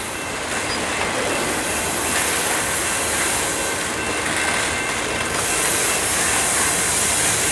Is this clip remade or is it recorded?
recorded